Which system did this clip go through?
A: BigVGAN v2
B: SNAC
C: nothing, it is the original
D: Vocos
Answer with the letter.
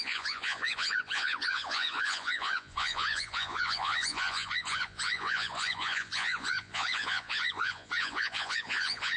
D